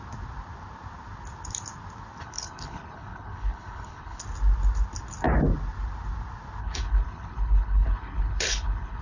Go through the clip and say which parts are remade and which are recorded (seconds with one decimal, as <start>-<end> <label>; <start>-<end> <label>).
0.0-2.2 recorded; 2.2-4.2 remade; 4.2-6.6 recorded; 6.6-9.0 remade

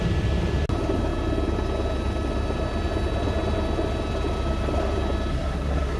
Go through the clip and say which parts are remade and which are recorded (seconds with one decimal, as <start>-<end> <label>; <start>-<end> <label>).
0.0-5.3 recorded; 5.3-6.0 remade

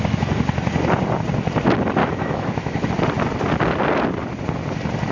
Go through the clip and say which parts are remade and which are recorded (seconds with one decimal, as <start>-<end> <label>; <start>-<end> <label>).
0.0-2.0 recorded; 2.0-2.9 remade; 2.9-5.1 recorded

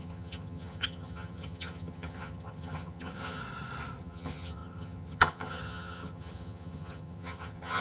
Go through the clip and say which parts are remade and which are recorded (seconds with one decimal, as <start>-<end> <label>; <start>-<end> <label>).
0.0-3.4 remade; 3.4-4.0 recorded; 4.0-7.8 remade